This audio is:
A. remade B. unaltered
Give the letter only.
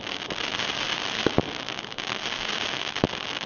B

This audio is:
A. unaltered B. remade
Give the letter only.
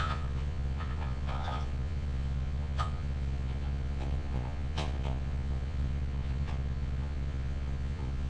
B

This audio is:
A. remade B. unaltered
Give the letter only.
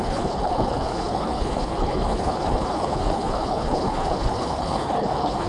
A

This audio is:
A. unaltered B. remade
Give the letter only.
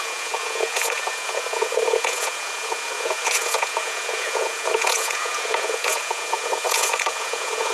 B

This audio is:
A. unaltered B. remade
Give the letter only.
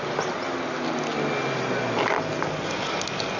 A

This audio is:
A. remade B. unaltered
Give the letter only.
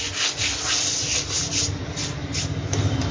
B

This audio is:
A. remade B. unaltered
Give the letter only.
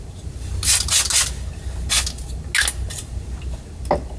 B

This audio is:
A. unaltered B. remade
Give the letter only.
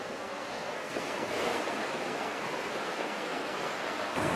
B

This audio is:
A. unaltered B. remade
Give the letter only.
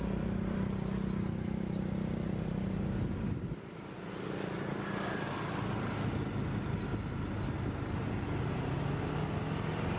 A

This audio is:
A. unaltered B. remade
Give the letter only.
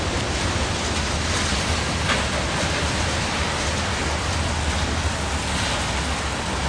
A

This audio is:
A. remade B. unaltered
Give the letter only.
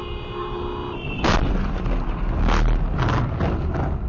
B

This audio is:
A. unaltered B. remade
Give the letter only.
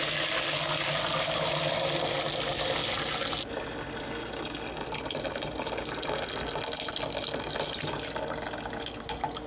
A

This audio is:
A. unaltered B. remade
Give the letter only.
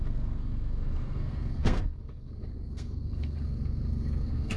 B